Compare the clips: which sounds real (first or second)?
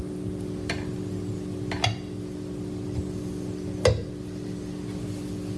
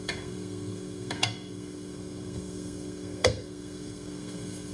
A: first